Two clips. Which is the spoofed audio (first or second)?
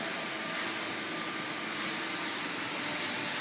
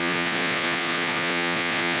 second